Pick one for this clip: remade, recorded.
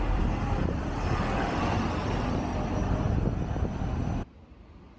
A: recorded